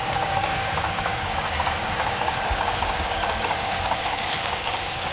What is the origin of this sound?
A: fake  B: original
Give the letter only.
A